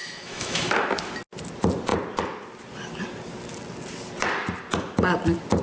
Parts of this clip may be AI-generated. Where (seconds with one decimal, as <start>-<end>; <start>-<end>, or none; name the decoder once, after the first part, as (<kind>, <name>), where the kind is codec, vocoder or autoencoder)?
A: 0.0-0.7 (autoencoder, DAC-VAE)